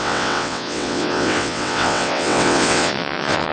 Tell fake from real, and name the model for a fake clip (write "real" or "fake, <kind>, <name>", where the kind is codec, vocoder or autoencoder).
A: fake, vocoder, WaveNeXt